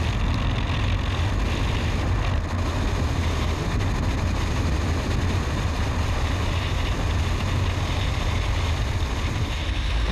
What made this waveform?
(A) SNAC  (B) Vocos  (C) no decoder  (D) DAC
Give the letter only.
C